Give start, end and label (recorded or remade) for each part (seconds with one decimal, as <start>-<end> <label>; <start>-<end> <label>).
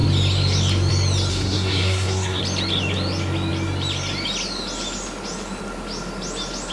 0.0-1.3 recorded; 1.3-2.4 remade; 2.4-6.7 recorded